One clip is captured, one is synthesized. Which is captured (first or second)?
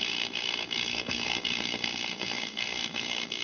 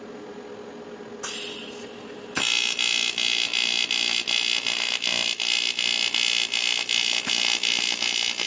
second